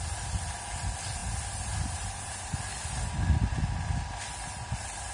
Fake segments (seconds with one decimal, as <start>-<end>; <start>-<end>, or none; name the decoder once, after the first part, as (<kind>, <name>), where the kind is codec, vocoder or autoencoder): none